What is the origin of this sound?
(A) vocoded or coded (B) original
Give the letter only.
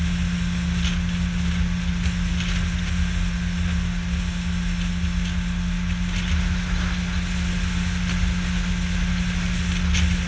B